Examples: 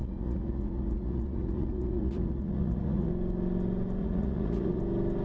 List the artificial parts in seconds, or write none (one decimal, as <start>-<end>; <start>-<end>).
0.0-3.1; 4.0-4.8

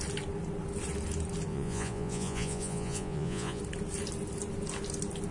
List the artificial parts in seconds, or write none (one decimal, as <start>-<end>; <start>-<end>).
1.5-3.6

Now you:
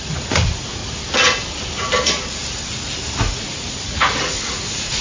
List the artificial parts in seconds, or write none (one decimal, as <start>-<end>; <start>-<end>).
0.0-0.8; 3.2-5.0